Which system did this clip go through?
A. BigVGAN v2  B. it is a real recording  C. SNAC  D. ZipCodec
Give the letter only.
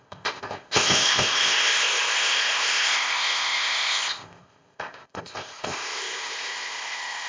D